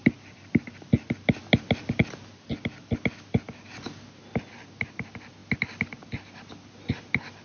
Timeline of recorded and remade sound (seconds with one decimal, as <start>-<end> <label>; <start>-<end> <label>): 0.0-7.4 recorded